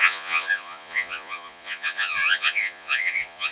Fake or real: fake